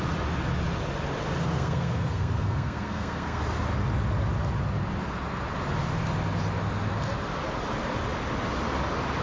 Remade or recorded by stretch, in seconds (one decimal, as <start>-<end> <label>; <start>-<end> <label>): 0.0-1.4 recorded; 1.4-3.4 remade; 3.4-9.2 recorded